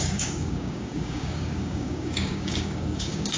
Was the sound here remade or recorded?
remade